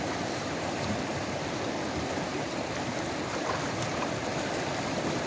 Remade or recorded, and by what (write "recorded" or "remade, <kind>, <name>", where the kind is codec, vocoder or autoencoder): remade, vocoder, BigVGAN v2